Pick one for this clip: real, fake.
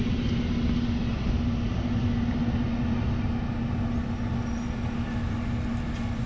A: real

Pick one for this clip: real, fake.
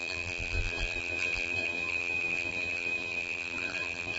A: fake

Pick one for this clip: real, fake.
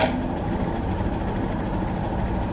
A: real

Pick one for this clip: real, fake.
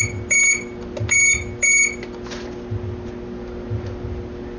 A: real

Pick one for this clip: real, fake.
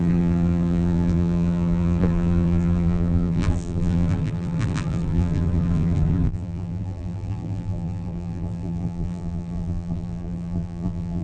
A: fake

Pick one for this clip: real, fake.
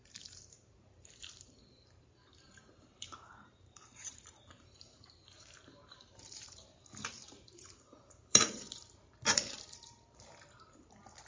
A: fake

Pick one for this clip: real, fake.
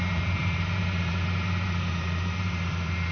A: fake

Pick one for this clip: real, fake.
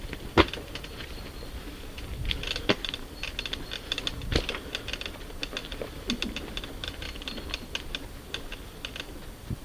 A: real